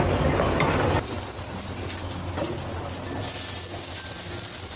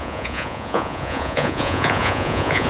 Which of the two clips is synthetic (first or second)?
second